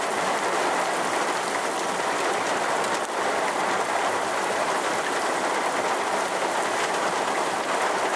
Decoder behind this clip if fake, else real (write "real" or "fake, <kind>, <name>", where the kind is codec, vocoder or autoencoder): real